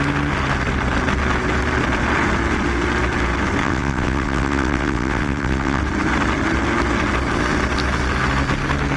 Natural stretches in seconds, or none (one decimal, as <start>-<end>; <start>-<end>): 0.0-3.6; 5.8-9.0